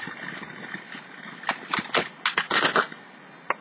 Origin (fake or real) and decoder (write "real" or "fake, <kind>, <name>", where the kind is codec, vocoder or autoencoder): real